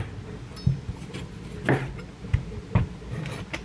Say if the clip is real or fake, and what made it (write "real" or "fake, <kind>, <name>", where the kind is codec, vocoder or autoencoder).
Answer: real